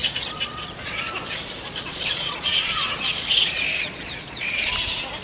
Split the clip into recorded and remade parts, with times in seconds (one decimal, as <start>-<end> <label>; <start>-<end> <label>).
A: 0.0-1.0 remade; 1.0-1.6 recorded; 1.6-4.7 remade; 4.7-5.2 recorded